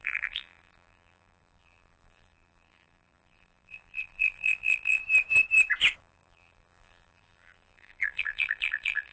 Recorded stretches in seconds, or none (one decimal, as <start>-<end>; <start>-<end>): 5.0-6.0